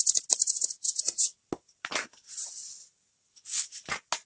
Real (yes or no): yes